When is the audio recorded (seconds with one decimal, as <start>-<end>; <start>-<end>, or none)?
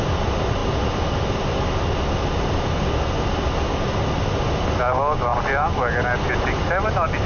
0.0-7.3